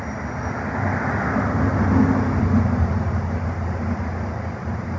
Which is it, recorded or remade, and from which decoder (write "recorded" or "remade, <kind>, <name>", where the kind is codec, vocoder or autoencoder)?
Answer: recorded